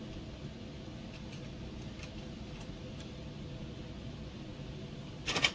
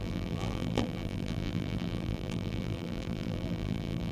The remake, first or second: second